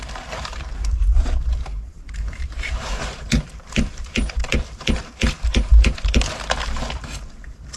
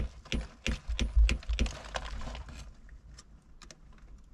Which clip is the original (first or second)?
second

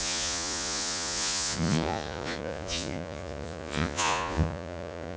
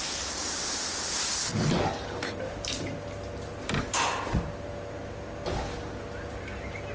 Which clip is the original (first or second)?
second